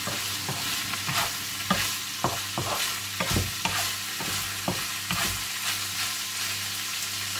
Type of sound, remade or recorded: recorded